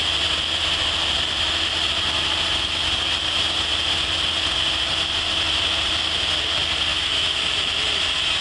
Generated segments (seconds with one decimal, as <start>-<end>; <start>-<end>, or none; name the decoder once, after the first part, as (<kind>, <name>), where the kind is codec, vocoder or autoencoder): 6.9-7.4 (autoencoder, DAC-VAE)